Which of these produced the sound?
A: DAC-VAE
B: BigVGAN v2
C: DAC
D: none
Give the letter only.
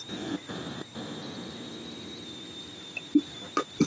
D